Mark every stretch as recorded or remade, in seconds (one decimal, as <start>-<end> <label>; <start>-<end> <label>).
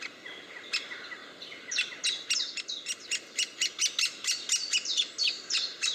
0.0-5.9 recorded